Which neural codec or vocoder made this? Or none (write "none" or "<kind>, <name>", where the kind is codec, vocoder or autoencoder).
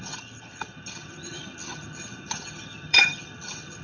vocoder, HiFi-GAN